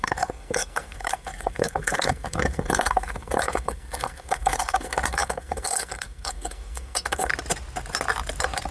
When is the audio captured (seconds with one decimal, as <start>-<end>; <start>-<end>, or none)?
7.3-8.7